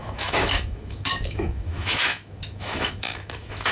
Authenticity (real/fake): fake